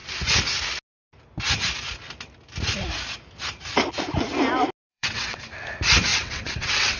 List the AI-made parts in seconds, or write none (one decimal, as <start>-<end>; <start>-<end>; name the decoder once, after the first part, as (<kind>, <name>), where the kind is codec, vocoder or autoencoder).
4.9-5.4 (vocoder, WaveNeXt); 6.1-7.0